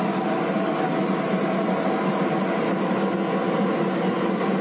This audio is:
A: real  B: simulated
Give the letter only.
A